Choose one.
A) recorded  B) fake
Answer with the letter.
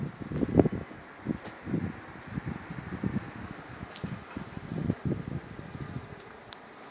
A